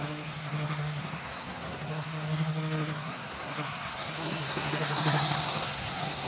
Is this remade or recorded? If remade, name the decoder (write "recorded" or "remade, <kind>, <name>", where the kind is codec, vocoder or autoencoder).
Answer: remade, codec, SNAC